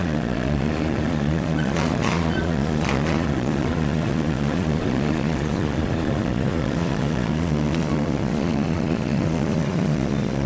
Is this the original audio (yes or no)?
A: no